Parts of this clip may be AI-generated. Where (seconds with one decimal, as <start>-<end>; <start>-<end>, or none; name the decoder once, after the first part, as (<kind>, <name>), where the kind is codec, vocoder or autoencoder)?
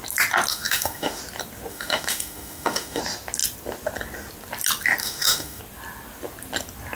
0.5-1.2 (autoencoder, DAC-VAE); 1.7-3.0; 5.0-5.6